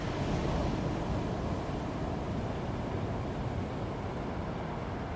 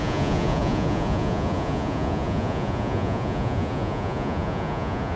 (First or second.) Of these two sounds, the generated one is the second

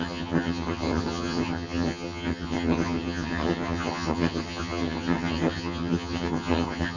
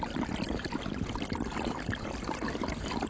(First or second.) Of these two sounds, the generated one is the first